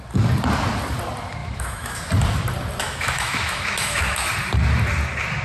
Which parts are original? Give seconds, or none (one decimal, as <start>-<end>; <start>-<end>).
0.0-1.4; 2.0-2.8; 4.3-5.4